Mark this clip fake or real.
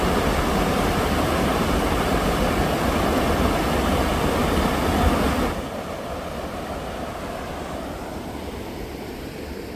real